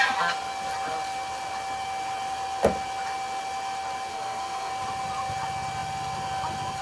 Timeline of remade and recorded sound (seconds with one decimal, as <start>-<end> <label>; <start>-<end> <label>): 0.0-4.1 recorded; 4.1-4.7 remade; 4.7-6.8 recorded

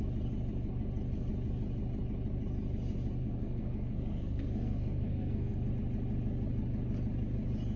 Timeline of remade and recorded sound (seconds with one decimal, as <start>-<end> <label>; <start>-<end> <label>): 0.0-3.2 recorded; 3.2-5.7 remade; 5.7-7.8 recorded

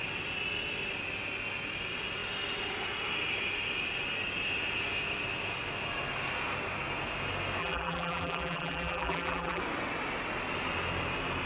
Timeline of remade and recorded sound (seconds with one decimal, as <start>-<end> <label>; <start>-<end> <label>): 0.0-7.6 recorded; 7.6-9.6 remade; 9.6-11.5 recorded

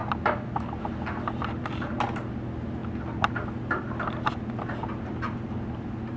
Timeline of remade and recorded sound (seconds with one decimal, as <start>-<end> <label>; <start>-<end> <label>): 0.0-6.2 recorded